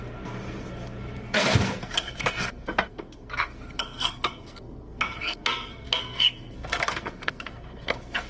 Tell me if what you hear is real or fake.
fake